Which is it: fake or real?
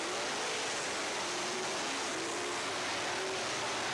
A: real